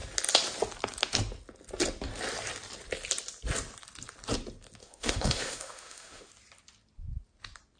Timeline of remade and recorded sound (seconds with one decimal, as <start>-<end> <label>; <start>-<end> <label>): 0.0-4.8 recorded; 4.8-6.3 remade; 6.3-7.8 recorded